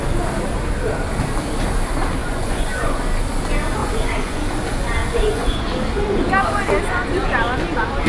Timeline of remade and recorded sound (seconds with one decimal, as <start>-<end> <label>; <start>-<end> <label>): 0.0-2.2 recorded; 2.2-3.0 remade; 3.0-3.8 recorded; 3.8-4.4 remade; 4.4-5.0 recorded; 5.0-5.6 remade; 5.6-8.1 recorded